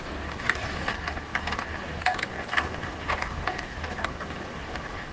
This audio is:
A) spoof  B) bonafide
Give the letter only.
A